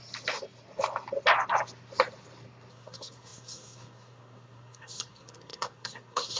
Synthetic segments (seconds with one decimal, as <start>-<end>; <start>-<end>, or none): 2.7-6.4